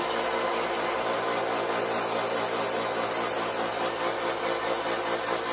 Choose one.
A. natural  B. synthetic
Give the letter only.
A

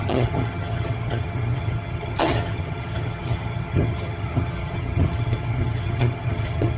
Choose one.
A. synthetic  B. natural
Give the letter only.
A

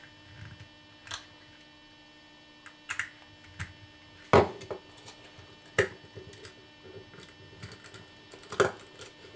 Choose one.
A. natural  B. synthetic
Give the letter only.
A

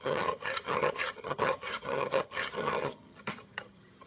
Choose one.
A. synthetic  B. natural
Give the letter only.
A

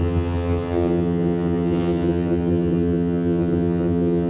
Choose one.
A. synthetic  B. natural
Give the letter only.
A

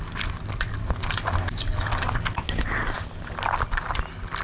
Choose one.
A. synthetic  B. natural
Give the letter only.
B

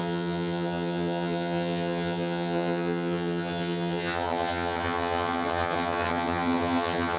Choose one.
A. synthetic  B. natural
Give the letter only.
A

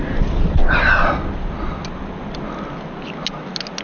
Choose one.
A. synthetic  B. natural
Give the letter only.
B